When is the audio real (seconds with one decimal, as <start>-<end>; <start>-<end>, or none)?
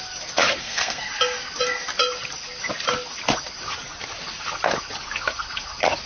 0.0-0.6; 1.1-6.1